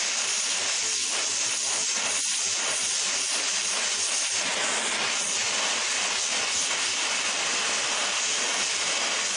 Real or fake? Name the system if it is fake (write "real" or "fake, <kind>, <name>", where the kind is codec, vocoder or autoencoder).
real